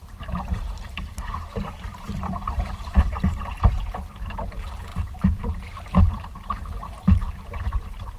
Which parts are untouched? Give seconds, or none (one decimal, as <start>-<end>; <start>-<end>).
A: none